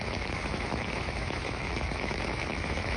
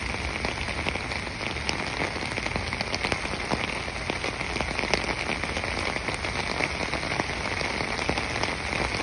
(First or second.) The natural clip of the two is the second